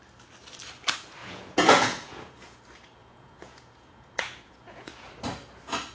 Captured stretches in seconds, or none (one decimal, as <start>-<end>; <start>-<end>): 0.0-1.2; 2.6-3.0; 5.1-5.9

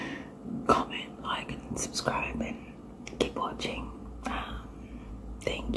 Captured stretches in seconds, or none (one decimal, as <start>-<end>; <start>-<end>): 0.0-5.8

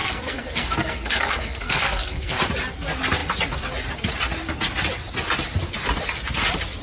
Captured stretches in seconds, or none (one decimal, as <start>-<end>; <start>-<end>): 2.4-6.8

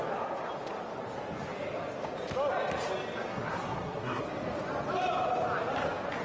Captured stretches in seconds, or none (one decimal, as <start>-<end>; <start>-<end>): 0.0-3.3; 4.2-6.2

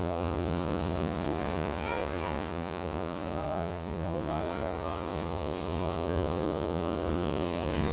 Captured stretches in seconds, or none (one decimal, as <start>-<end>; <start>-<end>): none